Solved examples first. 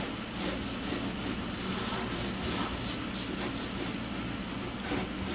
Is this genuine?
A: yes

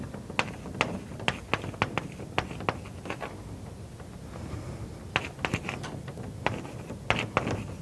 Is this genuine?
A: yes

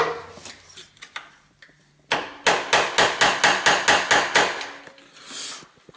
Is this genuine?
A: yes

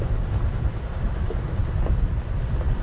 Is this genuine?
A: no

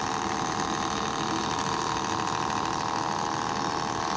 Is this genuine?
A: yes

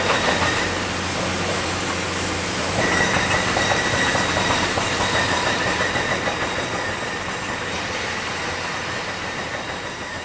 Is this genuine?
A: no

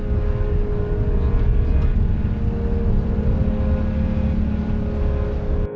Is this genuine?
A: yes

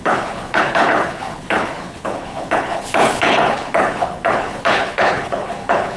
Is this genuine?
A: no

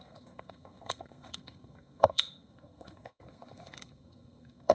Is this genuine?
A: no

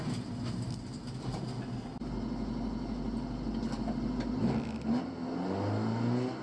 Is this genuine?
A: yes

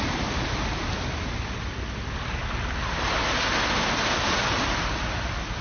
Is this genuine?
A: yes